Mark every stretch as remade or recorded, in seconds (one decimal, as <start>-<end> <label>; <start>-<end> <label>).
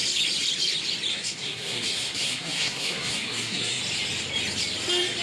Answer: 0.0-1.1 recorded; 1.1-3.8 remade; 3.8-5.2 recorded